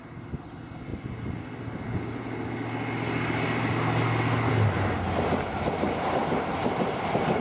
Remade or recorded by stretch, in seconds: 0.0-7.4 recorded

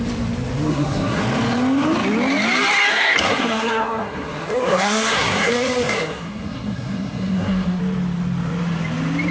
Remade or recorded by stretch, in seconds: 0.0-0.7 recorded; 0.7-1.2 remade; 1.2-2.9 recorded; 2.9-7.8 remade; 7.8-9.3 recorded